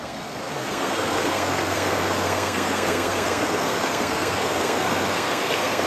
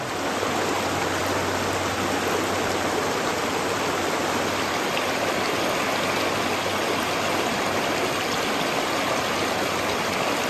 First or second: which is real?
second